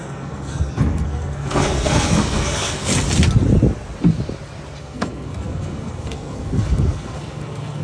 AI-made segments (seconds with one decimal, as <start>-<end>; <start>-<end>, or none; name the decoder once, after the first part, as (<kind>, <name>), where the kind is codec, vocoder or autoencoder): 0.0-2.9 (codec, SNAC); 4.8-7.8